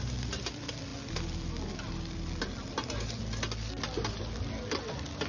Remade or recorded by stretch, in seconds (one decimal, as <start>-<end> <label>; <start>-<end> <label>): 0.0-5.3 recorded